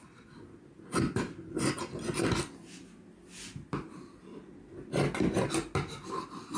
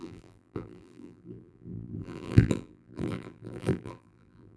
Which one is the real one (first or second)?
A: first